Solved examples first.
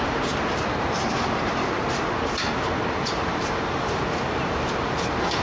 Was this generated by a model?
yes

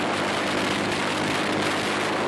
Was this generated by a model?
no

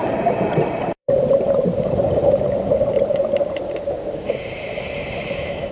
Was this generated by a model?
yes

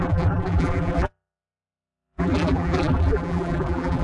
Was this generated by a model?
yes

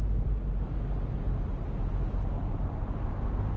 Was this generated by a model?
no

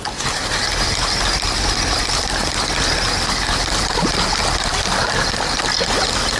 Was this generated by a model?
no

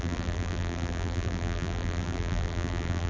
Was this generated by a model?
yes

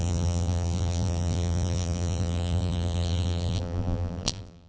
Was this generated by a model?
yes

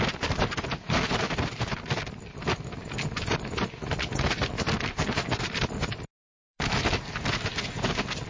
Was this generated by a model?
yes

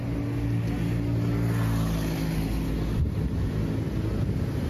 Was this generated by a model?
no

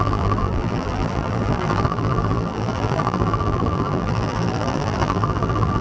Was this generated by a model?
yes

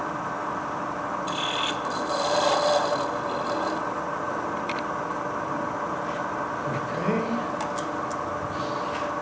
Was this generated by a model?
no